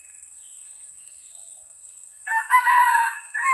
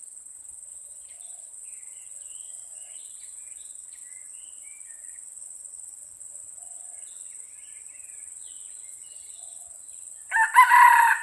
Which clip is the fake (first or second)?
first